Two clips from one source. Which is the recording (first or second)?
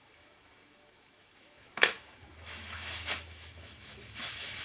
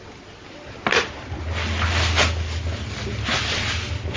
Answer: second